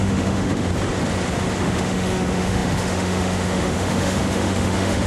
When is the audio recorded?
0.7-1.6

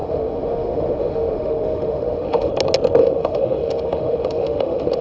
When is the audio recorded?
2.5-3.0

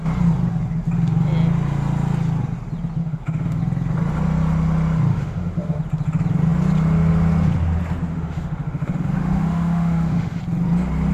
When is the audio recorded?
0.0-3.0; 3.6-5.1; 5.8-8.1; 10.4-11.1